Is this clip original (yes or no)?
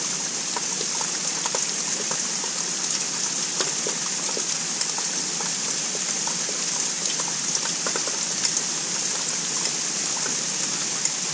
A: yes